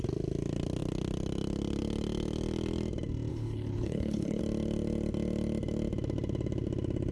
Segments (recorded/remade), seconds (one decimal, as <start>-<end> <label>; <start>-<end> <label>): 0.0-3.3 recorded; 3.3-4.4 remade; 4.4-7.1 recorded